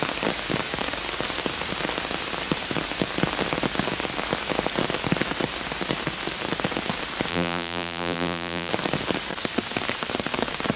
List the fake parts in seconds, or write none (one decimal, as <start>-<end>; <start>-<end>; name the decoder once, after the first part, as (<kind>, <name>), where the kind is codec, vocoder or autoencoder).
7.3-8.7 (vocoder, BigVGAN v2)